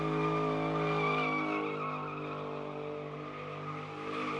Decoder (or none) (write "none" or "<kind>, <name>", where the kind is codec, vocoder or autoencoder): none